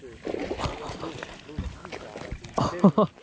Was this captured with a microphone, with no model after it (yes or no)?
yes